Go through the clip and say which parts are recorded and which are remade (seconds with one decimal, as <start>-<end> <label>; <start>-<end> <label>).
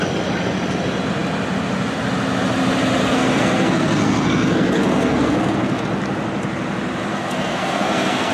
0.0-3.0 recorded; 3.0-5.8 remade; 5.8-7.1 recorded; 7.1-8.3 remade